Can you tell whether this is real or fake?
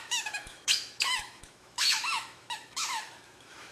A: fake